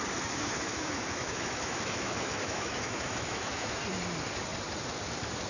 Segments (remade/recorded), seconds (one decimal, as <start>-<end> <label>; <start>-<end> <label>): 0.0-0.4 recorded; 0.4-3.7 remade; 3.7-5.5 recorded